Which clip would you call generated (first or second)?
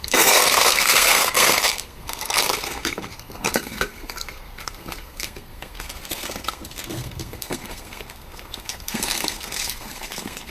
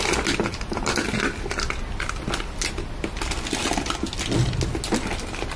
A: first